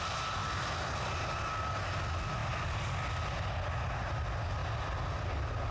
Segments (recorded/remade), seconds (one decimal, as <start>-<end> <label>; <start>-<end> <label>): 0.0-5.7 recorded